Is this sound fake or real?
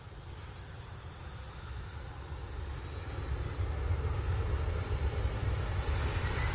real